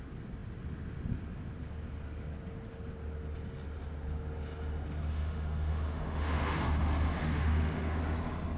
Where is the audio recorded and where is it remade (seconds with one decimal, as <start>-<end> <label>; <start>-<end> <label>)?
0.0-5.1 recorded; 5.1-8.0 remade; 8.0-8.6 recorded